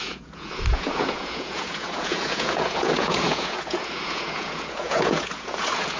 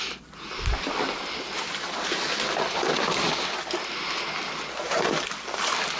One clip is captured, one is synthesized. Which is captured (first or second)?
second